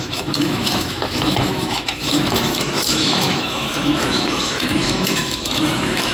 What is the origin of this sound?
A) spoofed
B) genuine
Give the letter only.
A